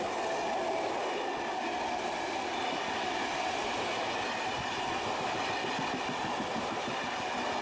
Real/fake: real